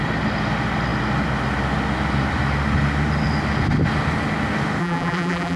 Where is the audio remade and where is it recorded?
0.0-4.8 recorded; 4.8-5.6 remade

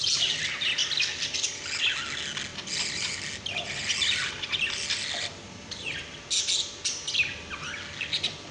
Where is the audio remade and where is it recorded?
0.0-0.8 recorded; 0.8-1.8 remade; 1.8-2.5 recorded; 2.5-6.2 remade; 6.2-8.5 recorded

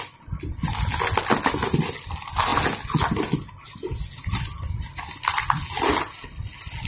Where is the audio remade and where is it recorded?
0.0-6.9 recorded

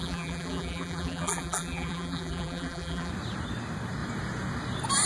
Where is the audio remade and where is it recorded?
0.0-3.1 remade; 3.1-5.1 recorded